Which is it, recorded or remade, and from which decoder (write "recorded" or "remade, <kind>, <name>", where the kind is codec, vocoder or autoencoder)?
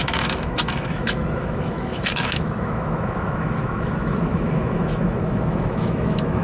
remade, autoencoder, DAC-VAE